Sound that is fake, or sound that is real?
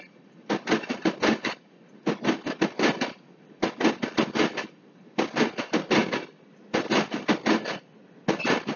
real